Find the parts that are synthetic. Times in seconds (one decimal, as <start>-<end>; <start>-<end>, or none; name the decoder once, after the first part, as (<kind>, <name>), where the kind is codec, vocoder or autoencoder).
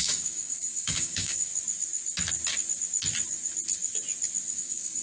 0.0-1.5 (codec, DAC); 4.5-5.0